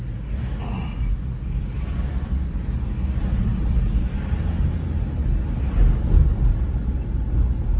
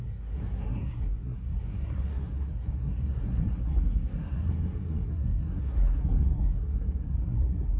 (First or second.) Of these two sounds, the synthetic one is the second